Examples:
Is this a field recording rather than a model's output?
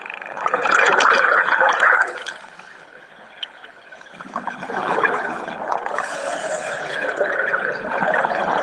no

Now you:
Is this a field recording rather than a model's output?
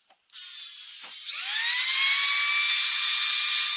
yes